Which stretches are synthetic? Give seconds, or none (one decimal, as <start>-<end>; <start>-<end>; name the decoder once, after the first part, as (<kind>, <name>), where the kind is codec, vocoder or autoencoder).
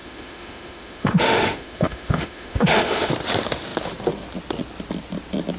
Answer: 0.0-3.1 (autoencoder, DAC-VAE)